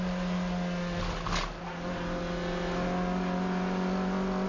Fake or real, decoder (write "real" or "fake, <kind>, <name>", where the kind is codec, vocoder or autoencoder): real